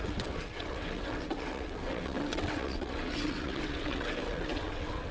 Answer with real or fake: fake